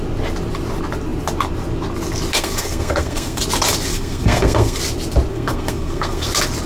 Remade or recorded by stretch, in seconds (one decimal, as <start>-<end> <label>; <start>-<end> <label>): 0.0-2.3 recorded; 2.3-3.4 remade; 3.4-3.9 recorded; 3.9-4.8 remade; 4.8-5.3 recorded; 5.3-6.3 remade; 6.3-6.7 recorded